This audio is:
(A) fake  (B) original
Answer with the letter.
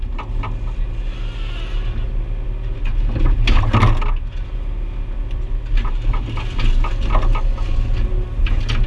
B